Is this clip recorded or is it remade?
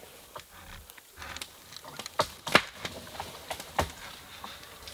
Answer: recorded